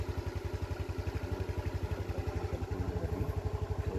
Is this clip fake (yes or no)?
no